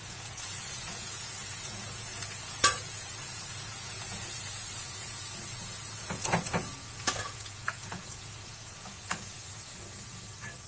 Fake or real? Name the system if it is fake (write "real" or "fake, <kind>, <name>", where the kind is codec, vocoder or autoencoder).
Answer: fake, vocoder, Vocos